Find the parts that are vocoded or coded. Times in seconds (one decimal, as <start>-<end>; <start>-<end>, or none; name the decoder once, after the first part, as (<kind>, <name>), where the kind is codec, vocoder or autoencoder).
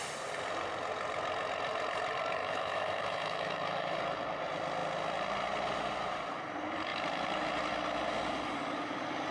2.4-4.0 (autoencoder, DAC-VAE)